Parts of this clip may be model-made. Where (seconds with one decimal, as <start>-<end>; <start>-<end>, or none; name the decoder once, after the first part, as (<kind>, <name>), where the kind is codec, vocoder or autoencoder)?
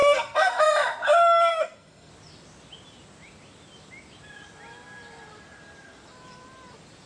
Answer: 0.0-0.6 (codec, SNAC); 1.5-2.1